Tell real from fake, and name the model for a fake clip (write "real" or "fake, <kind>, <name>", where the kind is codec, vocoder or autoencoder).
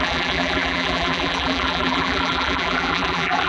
fake, vocoder, BigVGAN v2